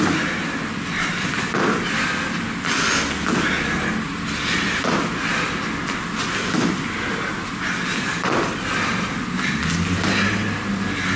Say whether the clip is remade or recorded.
recorded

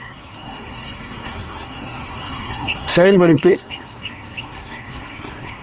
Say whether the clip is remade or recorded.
remade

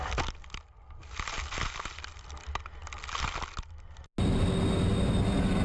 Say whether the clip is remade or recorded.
recorded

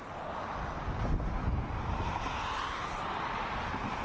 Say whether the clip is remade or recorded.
remade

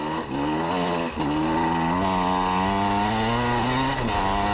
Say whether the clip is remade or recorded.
recorded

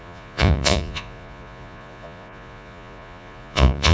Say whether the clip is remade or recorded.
remade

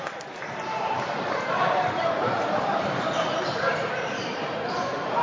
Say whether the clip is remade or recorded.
remade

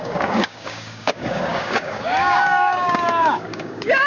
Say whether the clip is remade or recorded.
remade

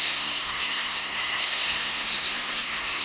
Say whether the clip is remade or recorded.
remade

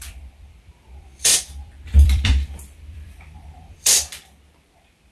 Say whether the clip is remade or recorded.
remade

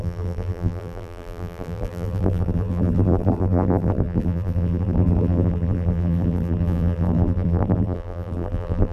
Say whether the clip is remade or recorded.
remade